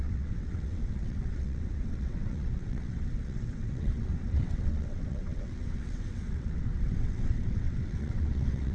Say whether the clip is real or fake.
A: fake